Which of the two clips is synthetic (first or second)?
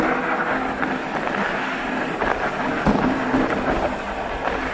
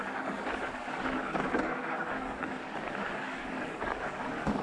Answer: second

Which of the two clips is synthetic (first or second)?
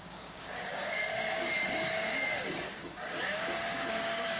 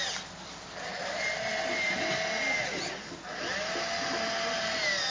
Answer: first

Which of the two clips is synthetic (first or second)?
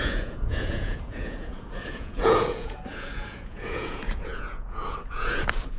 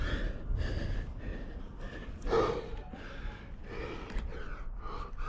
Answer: first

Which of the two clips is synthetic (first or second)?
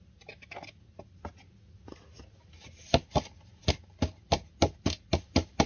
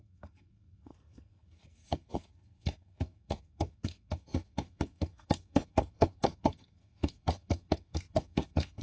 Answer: second